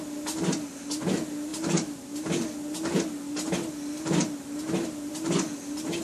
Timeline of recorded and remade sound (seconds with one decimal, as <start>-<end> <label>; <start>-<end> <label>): 0.0-6.0 recorded